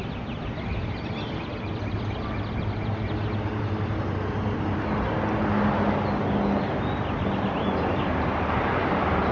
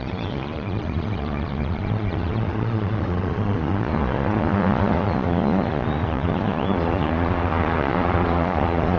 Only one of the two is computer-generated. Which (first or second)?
second